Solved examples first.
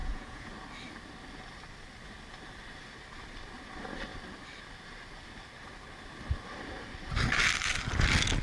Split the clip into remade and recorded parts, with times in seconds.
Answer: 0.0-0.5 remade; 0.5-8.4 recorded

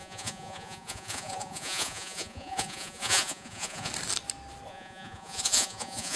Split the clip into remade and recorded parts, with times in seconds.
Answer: 0.0-3.9 remade; 3.9-4.7 recorded; 4.7-6.2 remade

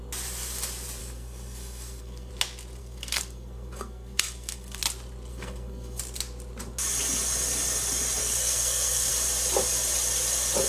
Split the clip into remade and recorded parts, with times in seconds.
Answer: 0.0-1.0 recorded; 1.0-2.3 remade; 2.3-2.8 recorded; 2.8-4.8 remade; 4.8-5.3 recorded; 5.3-6.0 remade; 6.0-8.2 recorded; 8.2-9.1 remade; 9.1-10.7 recorded

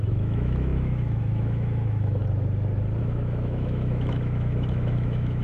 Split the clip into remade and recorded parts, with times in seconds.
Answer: 0.0-2.2 remade; 2.2-3.0 recorded; 3.0-5.4 remade

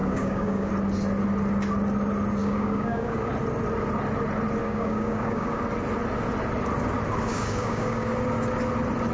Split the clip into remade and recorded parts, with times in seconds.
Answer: 0.0-0.7 remade; 0.7-2.4 recorded; 2.4-3.3 remade; 3.3-4.6 recorded; 4.6-5.6 remade; 5.6-7.3 recorded; 7.3-8.1 remade; 8.1-9.1 recorded

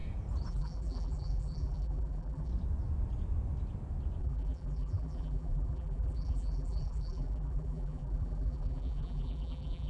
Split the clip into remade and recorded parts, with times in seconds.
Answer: 0.0-0.5 recorded; 0.5-2.5 remade; 2.5-4.2 recorded; 4.2-9.9 remade

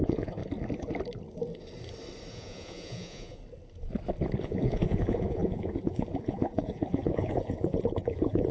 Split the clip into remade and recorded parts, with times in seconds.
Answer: 0.0-0.4 remade; 0.4-2.3 recorded; 2.3-3.4 remade; 3.4-4.4 recorded; 4.4-8.5 remade